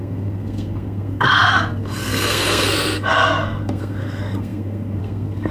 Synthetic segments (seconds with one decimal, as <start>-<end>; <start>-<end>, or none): 0.0-5.5